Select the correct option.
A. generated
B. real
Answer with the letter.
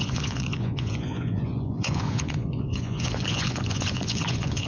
A